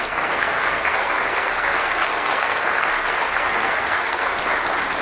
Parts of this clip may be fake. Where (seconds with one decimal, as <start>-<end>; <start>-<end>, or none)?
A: 0.0-4.4